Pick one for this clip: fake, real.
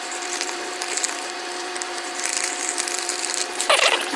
fake